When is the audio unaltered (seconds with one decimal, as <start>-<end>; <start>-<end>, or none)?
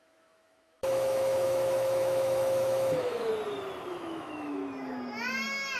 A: 3.3-3.9; 4.6-5.8